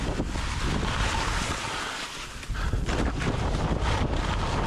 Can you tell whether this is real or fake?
real